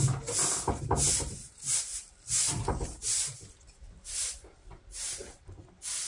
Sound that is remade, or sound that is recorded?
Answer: remade